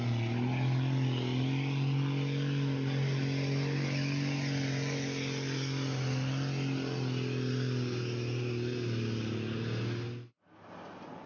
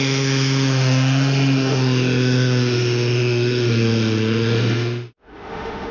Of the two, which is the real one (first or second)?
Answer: first